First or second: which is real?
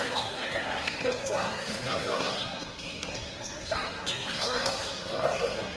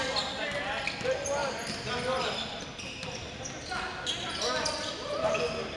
second